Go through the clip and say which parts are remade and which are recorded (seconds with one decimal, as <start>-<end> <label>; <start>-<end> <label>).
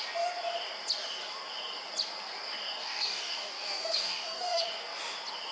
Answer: 0.0-2.8 recorded; 2.8-4.6 remade; 4.6-5.5 recorded